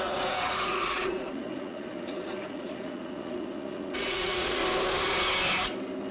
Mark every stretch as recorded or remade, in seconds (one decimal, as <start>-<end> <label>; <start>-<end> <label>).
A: 0.0-4.6 remade; 4.6-6.1 recorded